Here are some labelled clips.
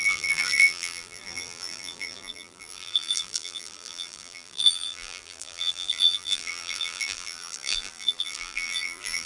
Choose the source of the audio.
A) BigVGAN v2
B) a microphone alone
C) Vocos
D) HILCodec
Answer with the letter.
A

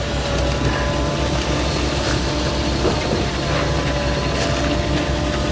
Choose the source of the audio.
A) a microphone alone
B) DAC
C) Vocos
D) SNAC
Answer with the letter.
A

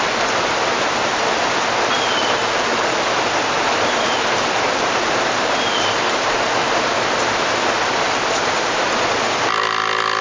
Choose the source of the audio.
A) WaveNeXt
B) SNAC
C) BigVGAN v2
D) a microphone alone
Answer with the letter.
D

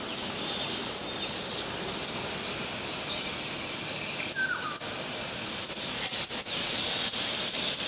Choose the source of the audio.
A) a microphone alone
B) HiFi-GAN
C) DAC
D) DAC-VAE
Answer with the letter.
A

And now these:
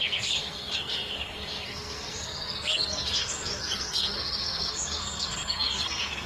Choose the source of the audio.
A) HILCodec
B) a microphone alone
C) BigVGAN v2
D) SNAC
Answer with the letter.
D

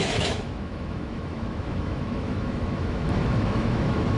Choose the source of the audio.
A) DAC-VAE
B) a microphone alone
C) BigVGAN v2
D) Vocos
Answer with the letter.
A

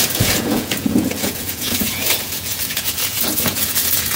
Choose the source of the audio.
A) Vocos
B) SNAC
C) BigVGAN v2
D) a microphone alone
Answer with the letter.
A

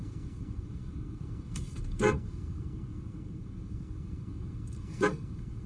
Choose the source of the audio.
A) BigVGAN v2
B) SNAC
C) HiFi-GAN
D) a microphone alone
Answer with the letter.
B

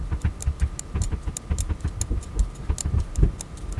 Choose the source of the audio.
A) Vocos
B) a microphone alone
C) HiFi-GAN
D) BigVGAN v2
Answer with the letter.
B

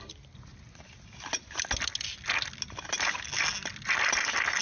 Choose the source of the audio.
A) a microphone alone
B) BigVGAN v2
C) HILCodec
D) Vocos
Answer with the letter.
A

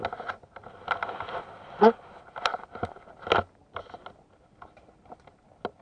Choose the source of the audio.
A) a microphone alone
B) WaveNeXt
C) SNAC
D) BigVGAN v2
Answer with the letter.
A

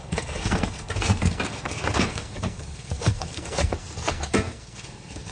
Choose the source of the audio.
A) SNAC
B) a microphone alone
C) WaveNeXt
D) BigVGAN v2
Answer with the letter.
A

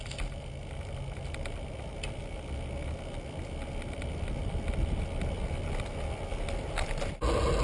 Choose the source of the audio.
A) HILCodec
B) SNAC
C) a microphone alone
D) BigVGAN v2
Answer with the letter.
C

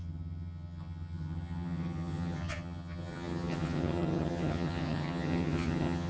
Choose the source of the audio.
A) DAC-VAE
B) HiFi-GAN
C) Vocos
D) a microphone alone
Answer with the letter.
B